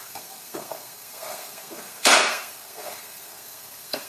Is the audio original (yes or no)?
no